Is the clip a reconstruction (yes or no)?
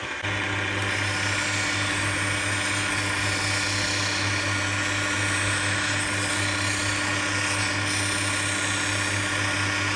no